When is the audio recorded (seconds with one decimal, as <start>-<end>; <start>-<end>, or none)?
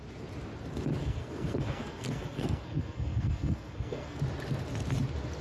0.0-1.0; 4.2-5.4